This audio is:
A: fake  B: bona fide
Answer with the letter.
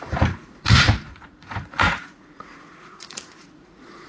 A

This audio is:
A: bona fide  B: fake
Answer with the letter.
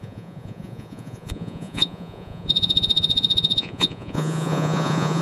B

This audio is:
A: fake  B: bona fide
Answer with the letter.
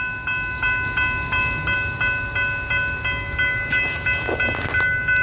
B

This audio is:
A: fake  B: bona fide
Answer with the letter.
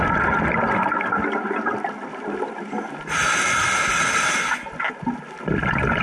B